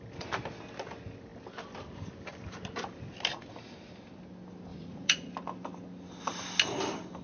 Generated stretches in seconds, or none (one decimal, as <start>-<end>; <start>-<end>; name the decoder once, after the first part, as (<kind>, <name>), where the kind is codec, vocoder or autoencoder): 4.7-5.3 (vocoder, Vocos)